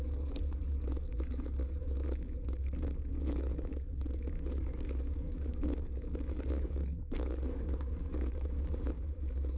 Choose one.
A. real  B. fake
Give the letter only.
B